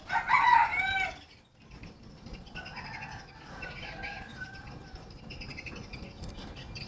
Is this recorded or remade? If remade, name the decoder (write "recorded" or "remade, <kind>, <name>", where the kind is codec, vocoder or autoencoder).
recorded